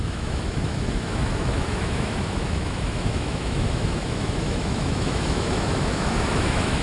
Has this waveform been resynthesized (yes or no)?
yes